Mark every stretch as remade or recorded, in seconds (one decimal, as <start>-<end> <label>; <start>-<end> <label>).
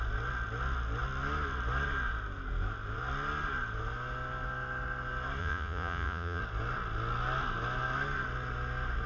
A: 0.0-5.4 recorded; 5.4-6.4 remade; 6.4-9.1 recorded